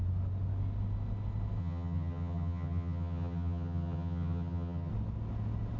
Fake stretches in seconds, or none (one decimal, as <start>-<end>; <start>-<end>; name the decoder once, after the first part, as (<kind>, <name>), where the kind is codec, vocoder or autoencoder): 1.6-4.9 (vocoder, HiFi-GAN)